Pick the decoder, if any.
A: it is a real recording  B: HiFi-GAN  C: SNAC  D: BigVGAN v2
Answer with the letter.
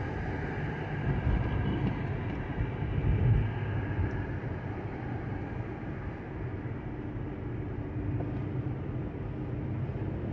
A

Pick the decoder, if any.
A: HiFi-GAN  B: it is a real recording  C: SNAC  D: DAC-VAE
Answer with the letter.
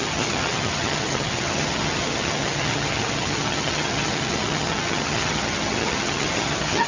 A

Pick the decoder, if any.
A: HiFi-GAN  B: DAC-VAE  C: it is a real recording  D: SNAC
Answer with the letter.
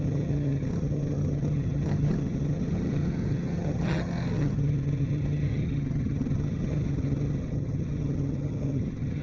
A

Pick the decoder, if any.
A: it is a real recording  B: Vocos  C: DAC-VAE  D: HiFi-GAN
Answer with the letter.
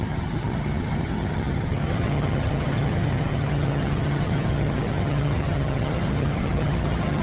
D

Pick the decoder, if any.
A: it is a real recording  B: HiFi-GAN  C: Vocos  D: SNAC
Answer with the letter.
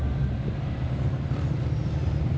A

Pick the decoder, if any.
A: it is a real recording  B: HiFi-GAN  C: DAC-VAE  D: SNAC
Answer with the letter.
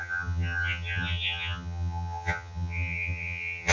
B